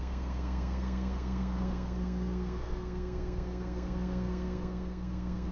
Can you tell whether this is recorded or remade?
remade